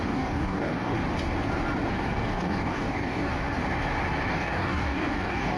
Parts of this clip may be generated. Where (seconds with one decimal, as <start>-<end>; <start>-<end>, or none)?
0.0-0.9; 1.9-3.3; 4.3-5.6